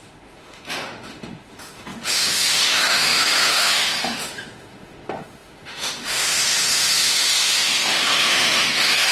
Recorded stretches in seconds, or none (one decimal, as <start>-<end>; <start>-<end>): none